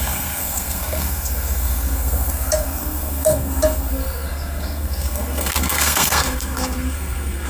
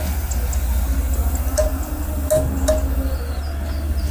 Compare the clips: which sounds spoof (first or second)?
first